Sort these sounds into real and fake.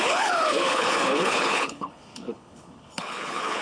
fake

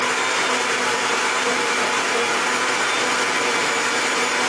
real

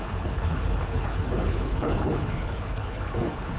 fake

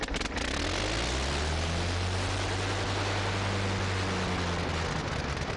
real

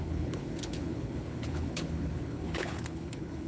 fake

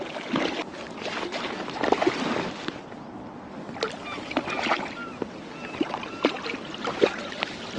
real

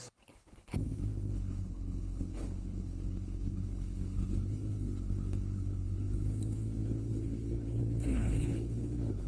fake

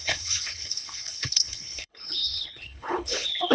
fake